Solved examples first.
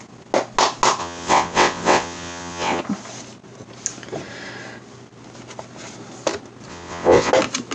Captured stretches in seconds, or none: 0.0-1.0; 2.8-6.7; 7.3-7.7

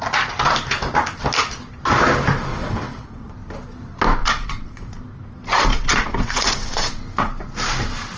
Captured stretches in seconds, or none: 0.0-2.5; 3.3-4.2; 4.9-5.7; 7.0-8.2

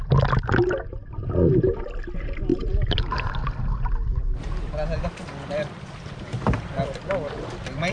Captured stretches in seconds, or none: 0.0-7.9

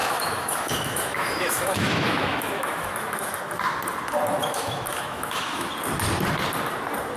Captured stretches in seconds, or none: 3.4-4.4; 5.7-7.2

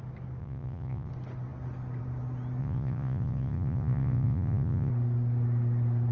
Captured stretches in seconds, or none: 0.0-0.4; 1.1-2.6; 4.9-6.1